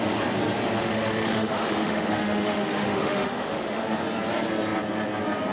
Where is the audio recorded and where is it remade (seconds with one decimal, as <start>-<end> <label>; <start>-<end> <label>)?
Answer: 0.0-0.8 recorded; 0.8-3.8 remade; 3.8-5.5 recorded